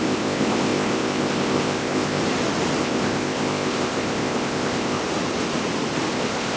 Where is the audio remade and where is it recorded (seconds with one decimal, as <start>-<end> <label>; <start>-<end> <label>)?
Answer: 0.0-2.2 remade; 2.2-2.8 recorded; 2.8-5.0 remade; 5.0-6.1 recorded; 6.1-6.6 remade